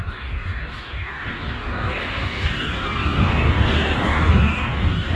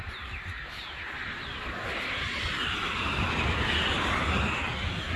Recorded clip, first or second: second